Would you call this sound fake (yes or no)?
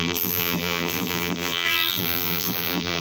yes